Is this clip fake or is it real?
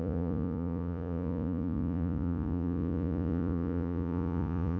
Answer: fake